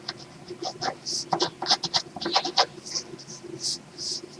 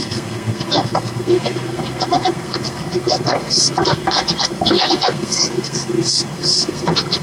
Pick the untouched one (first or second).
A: first